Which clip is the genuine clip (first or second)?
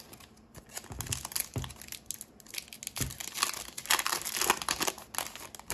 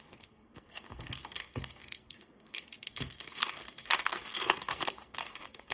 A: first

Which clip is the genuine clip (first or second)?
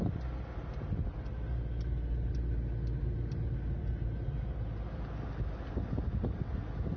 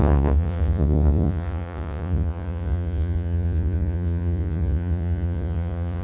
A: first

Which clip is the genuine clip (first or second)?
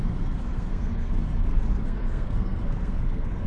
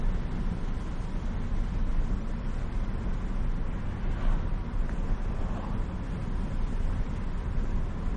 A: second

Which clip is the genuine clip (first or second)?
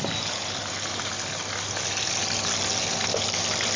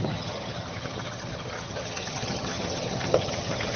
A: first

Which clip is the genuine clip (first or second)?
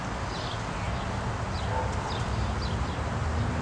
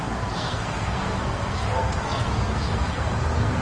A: first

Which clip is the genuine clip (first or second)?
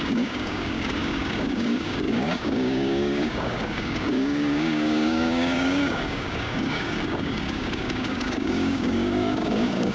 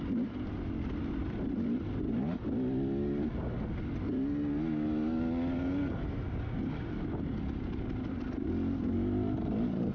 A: second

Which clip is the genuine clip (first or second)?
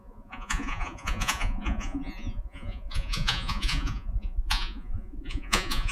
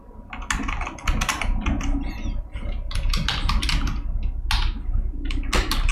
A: second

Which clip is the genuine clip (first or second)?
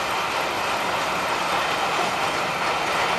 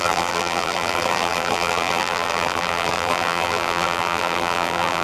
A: first